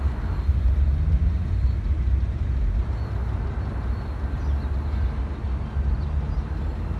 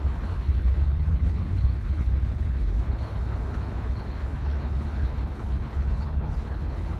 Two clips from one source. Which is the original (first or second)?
first